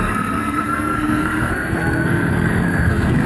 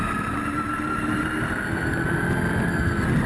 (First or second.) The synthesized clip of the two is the first